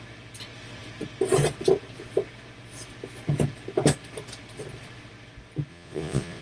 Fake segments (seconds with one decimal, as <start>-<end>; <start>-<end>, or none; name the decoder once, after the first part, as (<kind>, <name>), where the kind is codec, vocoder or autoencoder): 5.7-6.4 (vocoder, Vocos)